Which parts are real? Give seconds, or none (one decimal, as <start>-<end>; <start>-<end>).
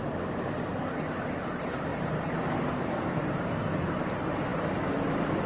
0.0-1.9; 3.7-5.5